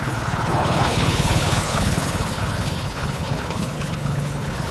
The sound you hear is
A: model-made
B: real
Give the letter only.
A